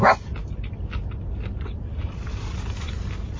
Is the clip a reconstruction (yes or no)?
yes